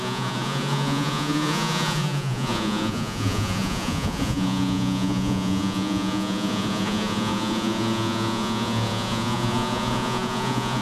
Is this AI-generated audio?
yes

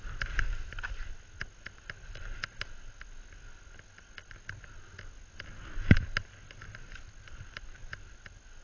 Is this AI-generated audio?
no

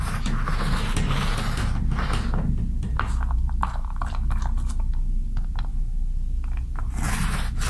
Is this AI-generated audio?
no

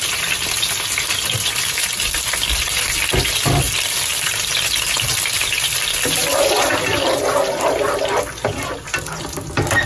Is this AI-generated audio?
no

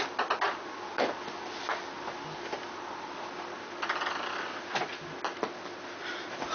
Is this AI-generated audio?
no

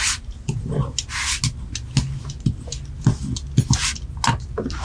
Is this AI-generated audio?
no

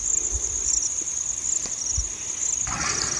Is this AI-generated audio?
no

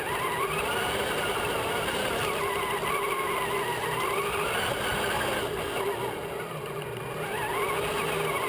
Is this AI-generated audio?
no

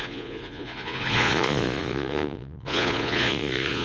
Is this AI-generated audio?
yes